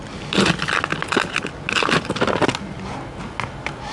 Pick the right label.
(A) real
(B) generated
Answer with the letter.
A